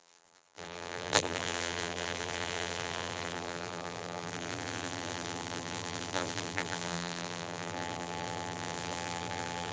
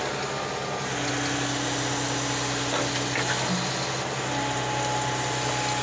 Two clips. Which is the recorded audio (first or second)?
second